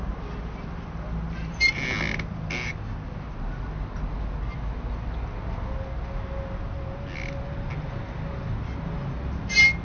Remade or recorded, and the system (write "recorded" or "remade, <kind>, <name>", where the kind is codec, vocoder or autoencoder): recorded